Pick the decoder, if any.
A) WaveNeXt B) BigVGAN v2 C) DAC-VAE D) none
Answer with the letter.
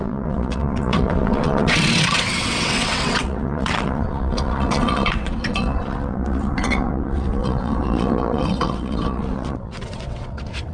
A